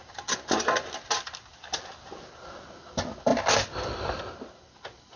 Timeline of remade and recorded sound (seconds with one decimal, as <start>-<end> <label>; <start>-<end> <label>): 0.0-5.2 recorded

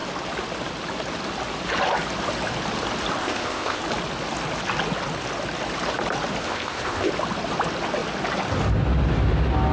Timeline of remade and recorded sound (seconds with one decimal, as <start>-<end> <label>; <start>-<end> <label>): 0.0-3.2 recorded; 3.2-3.8 remade; 3.8-6.4 recorded; 6.4-7.1 remade; 7.1-9.7 recorded

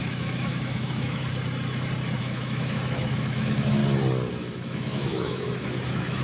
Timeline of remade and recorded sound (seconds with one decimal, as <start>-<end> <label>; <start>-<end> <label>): 0.0-1.2 remade; 1.2-2.2 recorded; 2.2-3.8 remade; 3.8-4.3 recorded; 4.3-6.2 remade

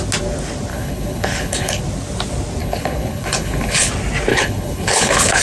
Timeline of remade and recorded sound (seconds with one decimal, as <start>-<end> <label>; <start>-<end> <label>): 0.0-0.7 recorded; 0.7-1.8 remade; 1.8-2.6 recorded; 2.6-3.9 remade; 3.9-4.3 recorded; 4.3-5.4 remade

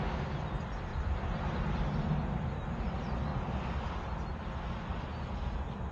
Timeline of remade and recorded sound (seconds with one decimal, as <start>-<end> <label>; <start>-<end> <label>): 0.0-0.9 recorded; 0.9-2.8 remade; 2.8-3.3 recorded; 3.3-4.4 remade; 4.4-5.9 recorded

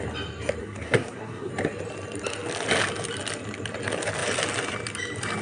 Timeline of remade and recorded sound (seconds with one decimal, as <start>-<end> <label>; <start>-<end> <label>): 0.0-0.6 recorded; 0.6-1.5 remade; 1.5-5.4 recorded

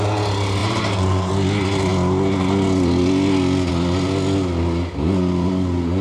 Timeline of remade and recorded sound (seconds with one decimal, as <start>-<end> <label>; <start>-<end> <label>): 0.0-0.6 recorded; 0.6-1.3 remade; 1.3-6.0 recorded